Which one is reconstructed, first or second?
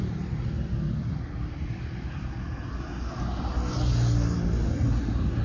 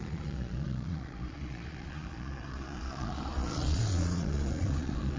second